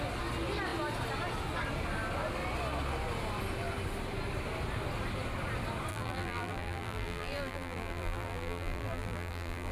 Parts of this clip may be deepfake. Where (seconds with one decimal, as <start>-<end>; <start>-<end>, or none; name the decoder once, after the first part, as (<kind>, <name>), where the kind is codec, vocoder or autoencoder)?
5.9-9.7 (vocoder, BigVGAN v2)

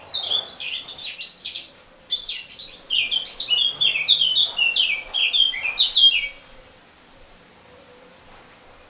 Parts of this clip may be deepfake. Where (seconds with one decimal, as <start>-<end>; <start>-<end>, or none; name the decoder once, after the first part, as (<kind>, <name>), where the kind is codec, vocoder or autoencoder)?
none

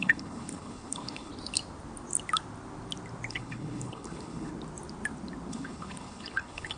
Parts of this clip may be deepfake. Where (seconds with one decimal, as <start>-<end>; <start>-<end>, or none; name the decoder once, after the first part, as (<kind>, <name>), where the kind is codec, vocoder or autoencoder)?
0.0-1.3 (codec, HILCodec); 3.3-4.5; 5.5-6.8

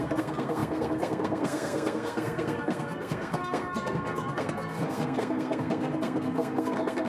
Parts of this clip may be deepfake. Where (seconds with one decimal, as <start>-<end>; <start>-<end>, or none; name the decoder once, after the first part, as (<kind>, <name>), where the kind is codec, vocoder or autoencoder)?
0.0-7.1 (codec, SNAC)

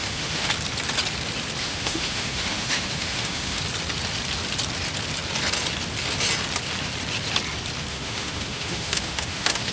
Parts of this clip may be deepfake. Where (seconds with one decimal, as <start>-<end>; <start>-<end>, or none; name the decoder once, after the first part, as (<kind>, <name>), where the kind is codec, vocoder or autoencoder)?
0.0-0.5 (autoencoder, DAC-VAE); 1.6-3.6; 7.9-9.7

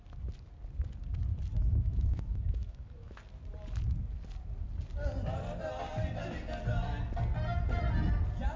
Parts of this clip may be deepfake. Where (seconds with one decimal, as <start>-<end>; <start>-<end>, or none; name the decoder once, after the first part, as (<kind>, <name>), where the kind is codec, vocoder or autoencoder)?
1.7-3.2 (autoencoder, DAC-VAE)

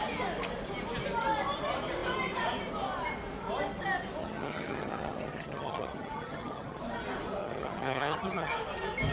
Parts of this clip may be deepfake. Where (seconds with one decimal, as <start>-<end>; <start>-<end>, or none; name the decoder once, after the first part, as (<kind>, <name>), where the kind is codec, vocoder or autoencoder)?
4.2-6.8 (vocoder, HiFi-GAN); 7.4-8.5

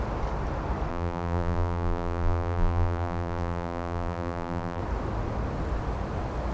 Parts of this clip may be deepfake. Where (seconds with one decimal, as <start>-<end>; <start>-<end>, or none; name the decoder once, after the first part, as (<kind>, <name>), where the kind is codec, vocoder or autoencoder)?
0.9-4.8 (vocoder, BigVGAN v2)